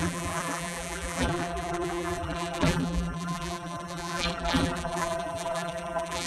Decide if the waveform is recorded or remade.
remade